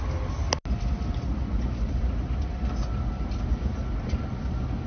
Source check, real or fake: real